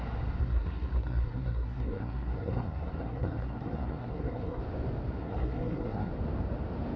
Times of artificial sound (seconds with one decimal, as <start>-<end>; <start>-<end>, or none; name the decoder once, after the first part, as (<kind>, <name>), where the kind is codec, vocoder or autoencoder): 0.4-4.6 (codec, SNAC); 5.2-6.1